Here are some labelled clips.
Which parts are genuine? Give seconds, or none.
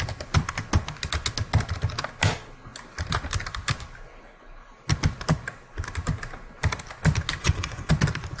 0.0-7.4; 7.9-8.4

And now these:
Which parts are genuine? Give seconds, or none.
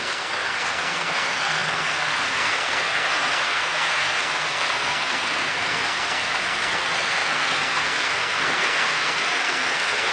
none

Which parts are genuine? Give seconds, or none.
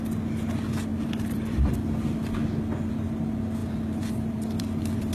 0.0-0.9; 1.7-3.6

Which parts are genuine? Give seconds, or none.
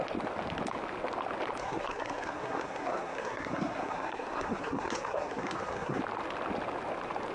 0.0-1.6; 6.0-7.3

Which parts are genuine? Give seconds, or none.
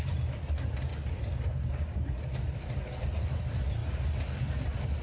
0.0-5.0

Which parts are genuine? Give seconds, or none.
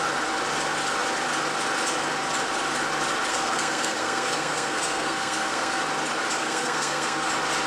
0.0-3.3; 5.8-6.4; 7.3-7.7